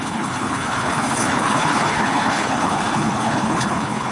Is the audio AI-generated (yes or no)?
yes